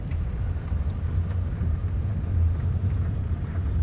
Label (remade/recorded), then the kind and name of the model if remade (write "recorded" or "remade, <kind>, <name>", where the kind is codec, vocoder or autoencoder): remade, vocoder, BigVGAN v2